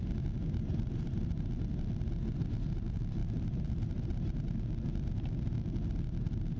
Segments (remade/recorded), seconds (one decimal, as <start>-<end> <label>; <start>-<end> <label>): 0.0-0.7 recorded; 0.7-1.3 remade; 1.3-3.2 recorded; 3.2-4.1 remade; 4.1-6.6 recorded